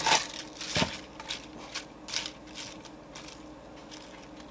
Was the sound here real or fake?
real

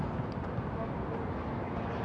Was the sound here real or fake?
real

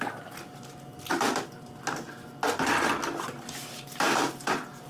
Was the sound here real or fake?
real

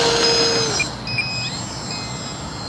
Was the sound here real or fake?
real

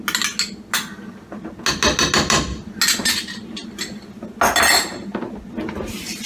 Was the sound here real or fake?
real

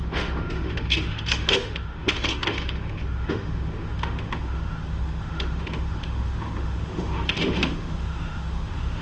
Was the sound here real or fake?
fake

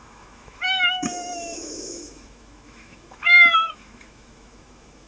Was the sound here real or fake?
fake